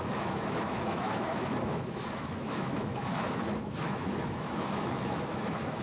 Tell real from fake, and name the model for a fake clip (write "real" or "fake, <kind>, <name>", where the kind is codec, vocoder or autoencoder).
fake, autoencoder, DAC-VAE